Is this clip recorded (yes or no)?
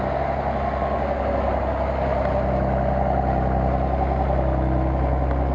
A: yes